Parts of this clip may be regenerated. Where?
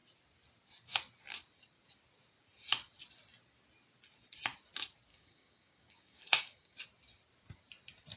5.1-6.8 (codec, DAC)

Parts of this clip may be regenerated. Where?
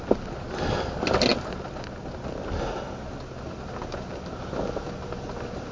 none